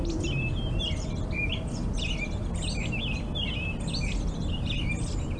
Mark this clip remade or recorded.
recorded